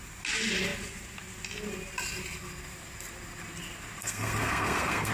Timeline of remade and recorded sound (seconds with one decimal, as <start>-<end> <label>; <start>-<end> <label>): 0.0-4.0 recorded; 4.0-5.1 remade